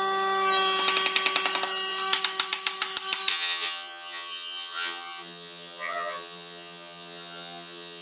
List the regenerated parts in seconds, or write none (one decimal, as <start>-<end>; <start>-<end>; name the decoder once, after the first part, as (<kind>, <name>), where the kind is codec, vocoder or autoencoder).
3.3-8.0 (vocoder, HiFi-GAN)